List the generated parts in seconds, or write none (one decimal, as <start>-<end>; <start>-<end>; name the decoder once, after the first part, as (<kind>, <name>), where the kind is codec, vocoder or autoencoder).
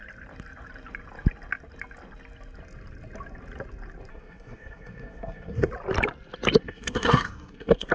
4.1-5.7 (codec, SNAC); 6.6-7.9